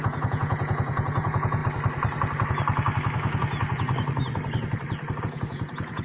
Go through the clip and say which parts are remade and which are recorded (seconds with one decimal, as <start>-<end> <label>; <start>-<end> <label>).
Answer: 0.0-1.6 remade; 1.6-5.2 recorded; 5.2-6.0 remade